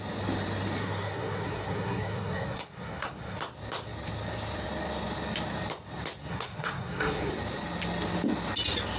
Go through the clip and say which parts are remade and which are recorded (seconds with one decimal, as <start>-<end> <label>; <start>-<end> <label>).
0.0-0.8 recorded; 0.8-3.4 remade; 3.4-6.3 recorded; 6.3-7.3 remade; 7.3-9.0 recorded